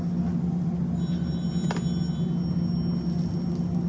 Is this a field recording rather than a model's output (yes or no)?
yes